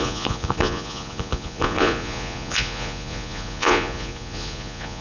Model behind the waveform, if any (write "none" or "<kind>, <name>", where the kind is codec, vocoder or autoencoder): vocoder, Vocos